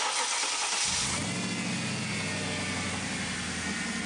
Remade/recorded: recorded